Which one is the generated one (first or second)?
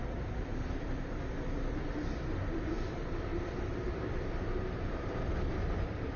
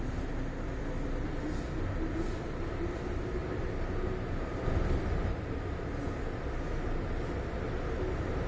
first